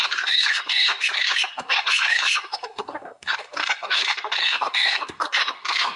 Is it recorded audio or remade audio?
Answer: remade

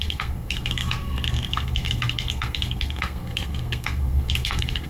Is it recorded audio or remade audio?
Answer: remade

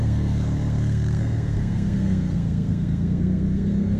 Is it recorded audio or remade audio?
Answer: remade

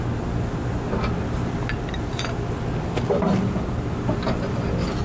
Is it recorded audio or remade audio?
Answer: recorded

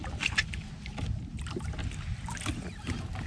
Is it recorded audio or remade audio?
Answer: recorded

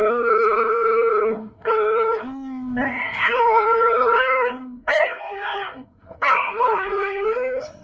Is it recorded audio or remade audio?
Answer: remade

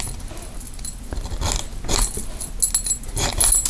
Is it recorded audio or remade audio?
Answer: recorded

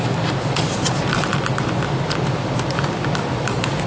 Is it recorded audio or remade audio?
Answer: recorded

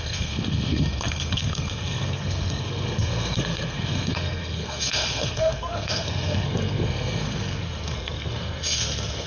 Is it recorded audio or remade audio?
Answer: remade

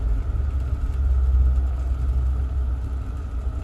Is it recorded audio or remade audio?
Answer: recorded